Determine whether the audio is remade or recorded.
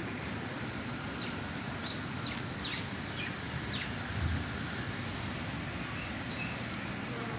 recorded